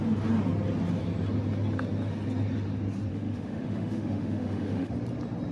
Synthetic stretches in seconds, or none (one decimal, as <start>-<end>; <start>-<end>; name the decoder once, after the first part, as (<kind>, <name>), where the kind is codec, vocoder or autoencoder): 3.1-4.9 (autoencoder, DAC-VAE)